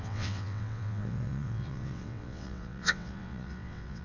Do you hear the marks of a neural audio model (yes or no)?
yes